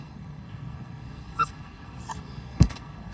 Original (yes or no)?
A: no